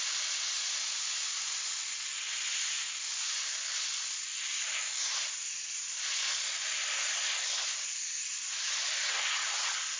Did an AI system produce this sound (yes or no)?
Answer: no